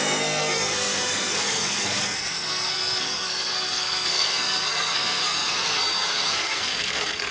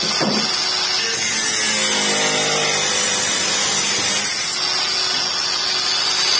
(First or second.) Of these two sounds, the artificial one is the first